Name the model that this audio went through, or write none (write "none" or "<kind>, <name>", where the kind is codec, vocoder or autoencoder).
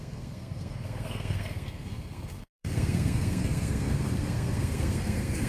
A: codec, SNAC